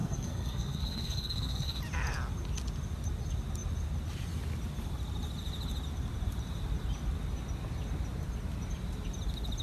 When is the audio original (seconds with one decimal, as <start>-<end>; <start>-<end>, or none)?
1.8-9.6